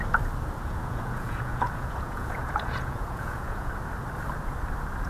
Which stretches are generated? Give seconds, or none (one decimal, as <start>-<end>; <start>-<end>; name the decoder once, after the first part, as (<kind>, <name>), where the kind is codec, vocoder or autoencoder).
0.6-3.7 (vocoder, Vocos)